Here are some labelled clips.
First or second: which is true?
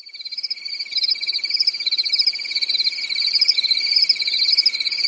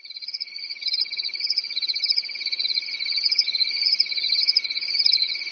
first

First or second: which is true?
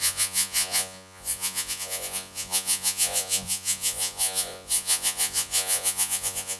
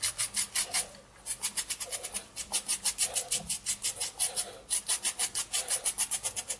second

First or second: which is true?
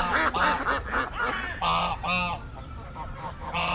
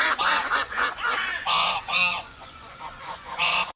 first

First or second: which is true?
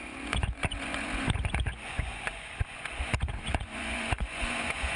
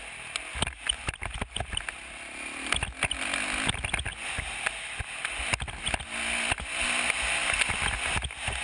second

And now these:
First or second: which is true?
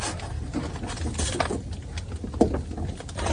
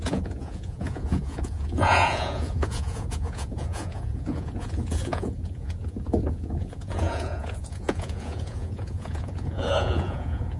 first